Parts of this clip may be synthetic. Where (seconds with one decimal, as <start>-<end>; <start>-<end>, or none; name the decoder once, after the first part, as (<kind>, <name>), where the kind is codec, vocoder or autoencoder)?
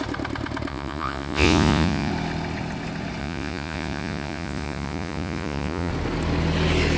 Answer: 0.7-2.1 (vocoder, Vocos); 3.2-5.9